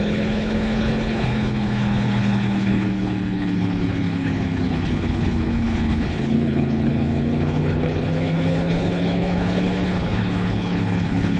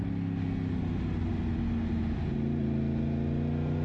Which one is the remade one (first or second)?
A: first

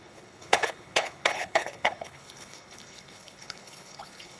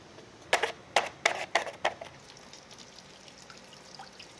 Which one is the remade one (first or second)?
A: first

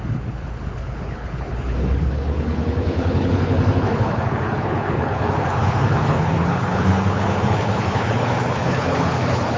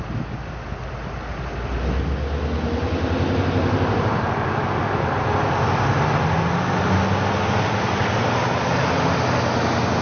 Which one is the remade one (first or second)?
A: first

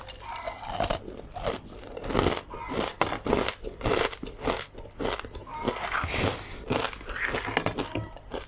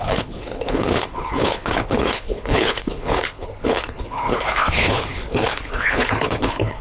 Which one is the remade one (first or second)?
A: second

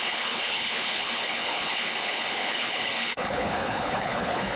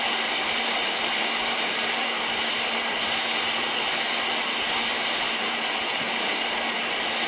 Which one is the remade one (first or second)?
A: first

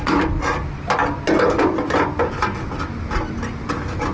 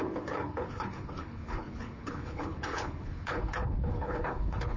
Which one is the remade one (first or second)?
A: second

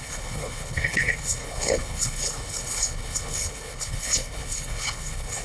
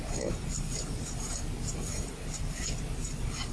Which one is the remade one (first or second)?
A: first